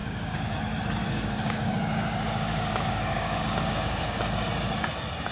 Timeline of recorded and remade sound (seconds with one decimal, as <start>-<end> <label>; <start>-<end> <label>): 0.0-0.6 remade; 0.6-1.0 recorded; 1.0-4.2 remade; 4.2-5.3 recorded